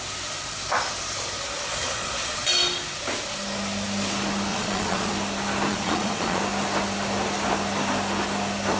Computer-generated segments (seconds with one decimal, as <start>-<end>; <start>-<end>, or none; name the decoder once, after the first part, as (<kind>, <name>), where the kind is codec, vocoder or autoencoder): 1.7-2.5 (vocoder, Vocos); 4.5-5.1; 5.7-6.4